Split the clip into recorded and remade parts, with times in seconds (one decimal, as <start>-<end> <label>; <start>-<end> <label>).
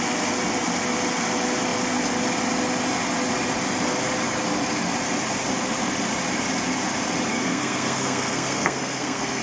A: 0.0-7.3 recorded; 7.3-9.4 remade